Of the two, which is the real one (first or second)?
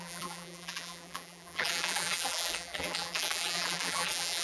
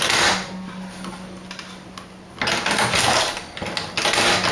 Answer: second